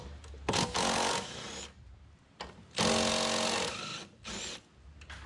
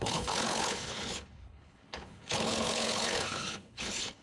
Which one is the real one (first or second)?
first